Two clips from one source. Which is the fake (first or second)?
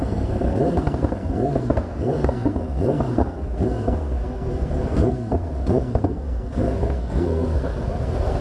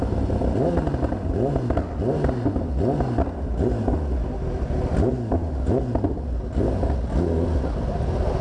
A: first